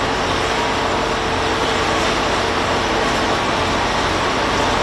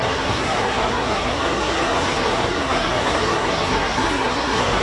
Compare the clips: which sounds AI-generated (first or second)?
second